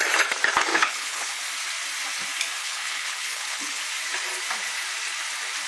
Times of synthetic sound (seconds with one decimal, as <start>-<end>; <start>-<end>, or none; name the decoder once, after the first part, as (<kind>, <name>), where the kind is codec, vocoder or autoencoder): 0.7-1.4 (codec, HILCodec); 2.6-3.8